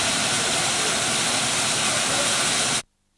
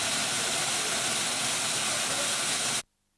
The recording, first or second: second